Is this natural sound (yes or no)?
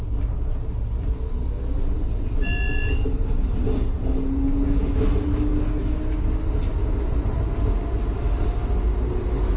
yes